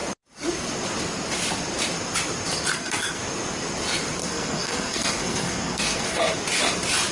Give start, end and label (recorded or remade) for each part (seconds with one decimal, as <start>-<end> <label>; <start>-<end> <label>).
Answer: 0.0-2.7 recorded; 2.7-3.2 remade; 3.2-4.2 recorded; 4.2-6.2 remade; 6.2-7.1 recorded

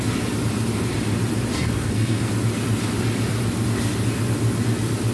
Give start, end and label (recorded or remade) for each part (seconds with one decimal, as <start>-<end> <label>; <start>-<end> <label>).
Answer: 0.0-1.5 recorded; 1.5-2.3 remade; 2.3-5.1 recorded

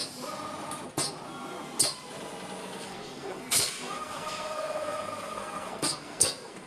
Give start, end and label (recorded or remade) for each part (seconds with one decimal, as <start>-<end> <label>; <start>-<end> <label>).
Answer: 0.0-2.6 recorded; 2.6-6.7 remade

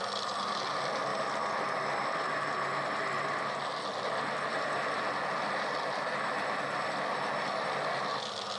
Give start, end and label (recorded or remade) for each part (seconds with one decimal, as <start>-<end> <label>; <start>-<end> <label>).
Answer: 0.0-8.6 recorded

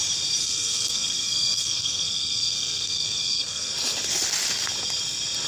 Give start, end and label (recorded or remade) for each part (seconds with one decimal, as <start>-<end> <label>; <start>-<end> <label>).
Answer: 0.0-0.4 recorded; 0.4-3.7 remade; 3.7-5.5 recorded

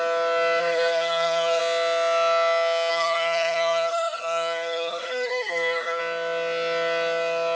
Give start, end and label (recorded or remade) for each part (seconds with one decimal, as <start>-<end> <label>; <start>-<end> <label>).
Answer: 0.0-0.6 recorded; 0.6-1.6 remade; 1.6-2.9 recorded; 2.9-6.0 remade; 6.0-7.6 recorded

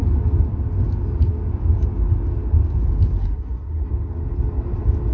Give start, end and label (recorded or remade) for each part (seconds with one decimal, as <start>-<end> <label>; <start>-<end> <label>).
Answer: 0.0-3.2 recorded; 3.2-3.9 remade; 3.9-5.1 recorded

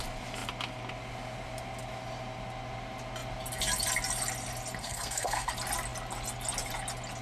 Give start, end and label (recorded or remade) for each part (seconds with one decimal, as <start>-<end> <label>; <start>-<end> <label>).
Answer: 0.0-4.8 recorded; 4.8-5.5 remade; 5.5-7.2 recorded